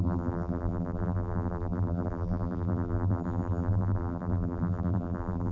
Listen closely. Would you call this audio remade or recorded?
remade